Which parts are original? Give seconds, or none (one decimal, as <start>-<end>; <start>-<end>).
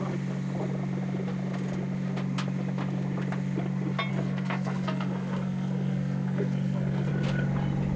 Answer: 0.0-4.1; 7.1-8.0